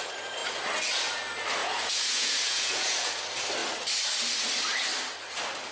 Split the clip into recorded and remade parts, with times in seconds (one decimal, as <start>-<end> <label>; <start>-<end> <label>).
0.0-1.6 recorded; 1.6-3.1 remade; 3.1-5.7 recorded